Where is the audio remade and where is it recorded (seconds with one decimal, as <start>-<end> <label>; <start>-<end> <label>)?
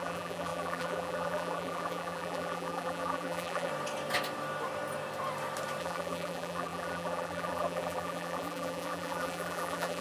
0.0-3.7 remade; 3.7-5.8 recorded; 5.8-10.0 remade